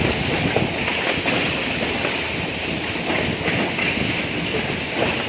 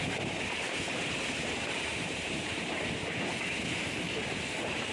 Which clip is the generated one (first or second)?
second